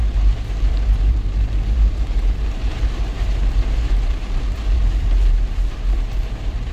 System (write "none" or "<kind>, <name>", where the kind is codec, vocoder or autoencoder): vocoder, BigVGAN v2